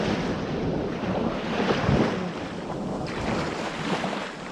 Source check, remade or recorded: recorded